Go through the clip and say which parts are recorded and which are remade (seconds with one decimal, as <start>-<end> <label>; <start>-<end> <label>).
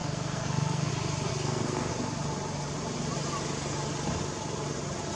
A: 0.0-0.9 remade; 0.9-1.3 recorded; 1.3-1.9 remade; 1.9-5.1 recorded